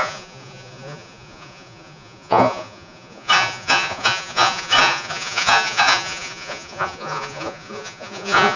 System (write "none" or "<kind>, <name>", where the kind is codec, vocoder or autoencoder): vocoder, Vocos